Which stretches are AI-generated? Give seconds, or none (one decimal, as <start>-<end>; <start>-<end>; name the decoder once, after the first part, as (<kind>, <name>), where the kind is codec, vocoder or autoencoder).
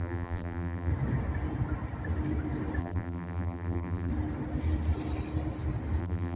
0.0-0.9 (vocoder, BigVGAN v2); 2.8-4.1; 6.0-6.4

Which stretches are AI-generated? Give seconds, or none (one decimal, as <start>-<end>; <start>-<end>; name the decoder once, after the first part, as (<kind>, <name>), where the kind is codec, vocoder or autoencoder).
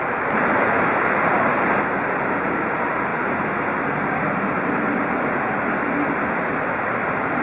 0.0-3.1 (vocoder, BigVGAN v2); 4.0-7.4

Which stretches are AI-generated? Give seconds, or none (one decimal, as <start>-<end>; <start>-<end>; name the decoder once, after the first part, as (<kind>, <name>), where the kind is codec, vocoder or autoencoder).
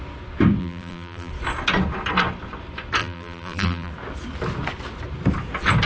0.6-1.3 (vocoder, BigVGAN v2); 3.0-3.9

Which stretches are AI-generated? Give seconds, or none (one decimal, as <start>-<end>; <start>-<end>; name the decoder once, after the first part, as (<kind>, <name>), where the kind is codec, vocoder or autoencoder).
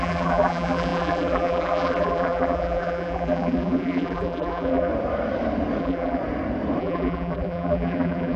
0.0-4.9 (vocoder, BigVGAN v2); 5.8-6.2; 6.8-8.4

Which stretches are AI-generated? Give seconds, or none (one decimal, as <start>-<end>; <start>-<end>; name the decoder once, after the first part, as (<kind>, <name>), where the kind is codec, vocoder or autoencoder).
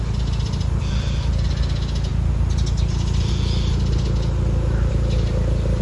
none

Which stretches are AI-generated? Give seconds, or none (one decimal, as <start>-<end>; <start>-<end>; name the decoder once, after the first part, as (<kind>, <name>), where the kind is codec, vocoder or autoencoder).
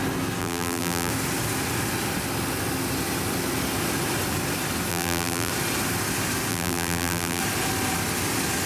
0.4-1.1 (vocoder, BigVGAN v2); 4.9-5.5; 6.5-7.4